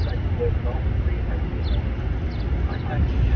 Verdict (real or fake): real